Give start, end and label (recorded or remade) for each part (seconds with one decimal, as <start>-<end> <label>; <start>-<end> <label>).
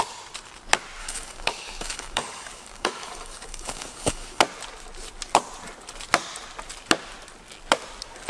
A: 0.0-1.0 recorded; 1.0-4.4 remade; 4.4-8.3 recorded